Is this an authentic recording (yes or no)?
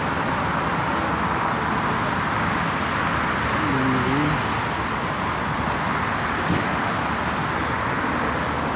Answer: yes